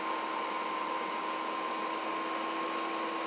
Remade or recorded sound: recorded